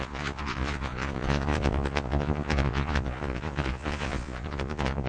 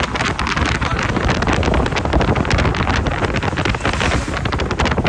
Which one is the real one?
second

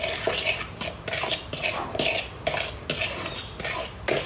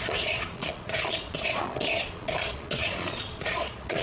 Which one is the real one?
first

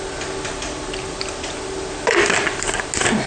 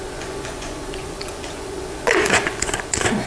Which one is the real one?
first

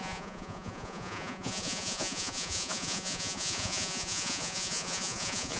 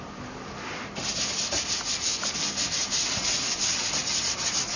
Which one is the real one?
second